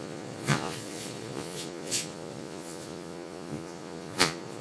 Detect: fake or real fake